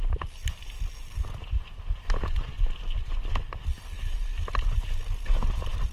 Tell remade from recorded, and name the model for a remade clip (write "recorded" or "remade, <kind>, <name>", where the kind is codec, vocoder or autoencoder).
recorded